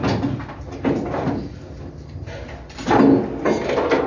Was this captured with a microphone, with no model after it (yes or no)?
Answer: yes